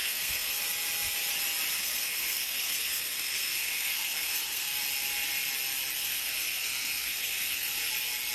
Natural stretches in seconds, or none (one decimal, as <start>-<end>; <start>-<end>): 0.6-1.8; 4.7-6.0; 7.9-8.3